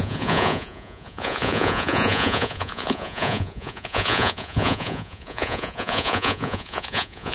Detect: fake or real fake